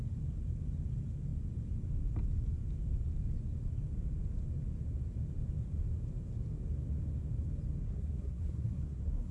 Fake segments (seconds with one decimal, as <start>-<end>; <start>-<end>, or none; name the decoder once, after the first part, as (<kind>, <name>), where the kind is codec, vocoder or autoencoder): 7.8-9.3 (codec, SNAC)

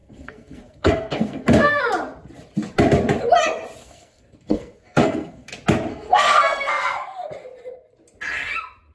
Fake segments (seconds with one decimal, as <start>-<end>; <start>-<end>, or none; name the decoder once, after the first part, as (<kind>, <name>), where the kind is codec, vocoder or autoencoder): 0.0-1.8 (codec, SNAC); 3.8-5.5; 5.9-7.3